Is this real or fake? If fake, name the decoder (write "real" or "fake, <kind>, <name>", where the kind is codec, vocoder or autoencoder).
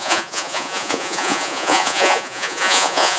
fake, vocoder, Vocos